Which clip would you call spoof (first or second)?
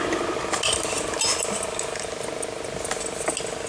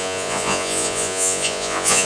second